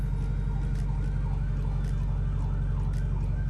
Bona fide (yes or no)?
yes